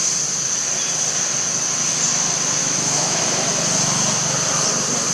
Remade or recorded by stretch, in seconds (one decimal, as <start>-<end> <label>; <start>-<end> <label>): 0.0-2.6 recorded; 2.6-3.2 remade; 3.2-5.1 recorded